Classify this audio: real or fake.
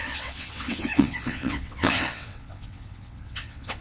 fake